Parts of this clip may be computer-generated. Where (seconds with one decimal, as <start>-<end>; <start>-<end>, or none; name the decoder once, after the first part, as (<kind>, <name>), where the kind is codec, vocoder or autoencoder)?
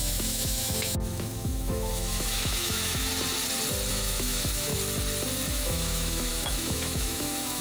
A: 0.0-3.1 (autoencoder, DAC-VAE); 3.9-4.7; 5.5-7.6